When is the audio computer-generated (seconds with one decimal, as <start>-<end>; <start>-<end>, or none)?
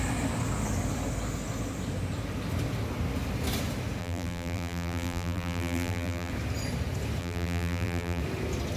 4.0-6.3; 7.2-8.2